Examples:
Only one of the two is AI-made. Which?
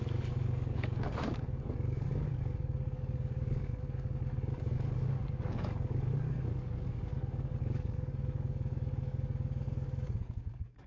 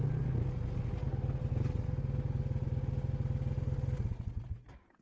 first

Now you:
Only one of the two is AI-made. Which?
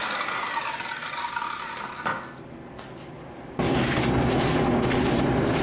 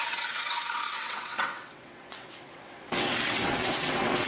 second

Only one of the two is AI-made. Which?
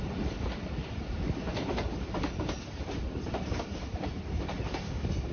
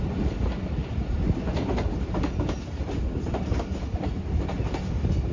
first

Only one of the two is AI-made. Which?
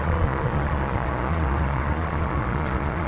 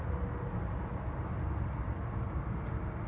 first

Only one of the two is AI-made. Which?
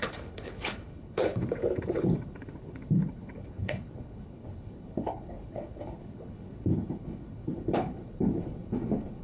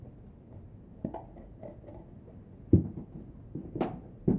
first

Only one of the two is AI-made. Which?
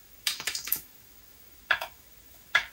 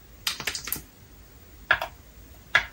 first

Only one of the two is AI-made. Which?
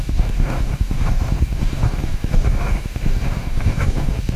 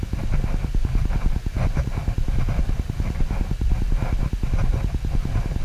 first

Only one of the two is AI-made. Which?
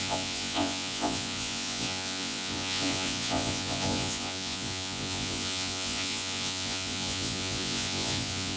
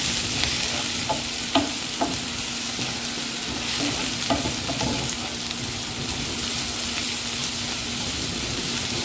first